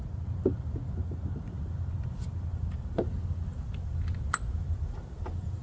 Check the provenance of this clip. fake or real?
real